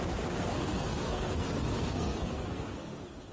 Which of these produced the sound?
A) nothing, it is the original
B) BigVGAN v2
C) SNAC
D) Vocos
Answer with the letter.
C